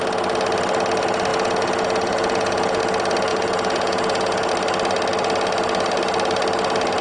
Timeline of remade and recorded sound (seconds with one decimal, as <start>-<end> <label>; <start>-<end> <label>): 0.0-1.3 recorded; 1.3-2.8 remade; 2.8-3.3 recorded; 3.3-4.5 remade; 4.5-7.0 recorded